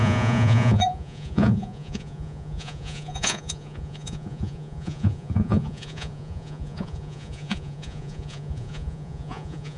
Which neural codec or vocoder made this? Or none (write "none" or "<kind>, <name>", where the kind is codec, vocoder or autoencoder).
vocoder, Vocos